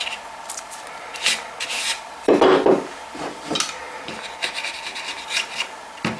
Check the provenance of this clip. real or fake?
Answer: real